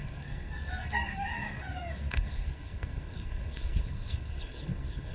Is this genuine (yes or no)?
no